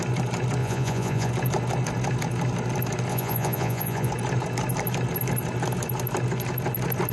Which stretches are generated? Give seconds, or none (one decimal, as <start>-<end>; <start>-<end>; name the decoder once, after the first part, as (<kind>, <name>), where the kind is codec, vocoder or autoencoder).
0.6-1.3 (vocoder, Vocos); 3.1-4.1